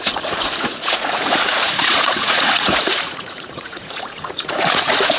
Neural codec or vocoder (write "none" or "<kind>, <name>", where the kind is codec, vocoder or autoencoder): vocoder, Vocos